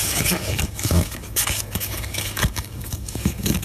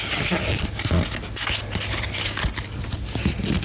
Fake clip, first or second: first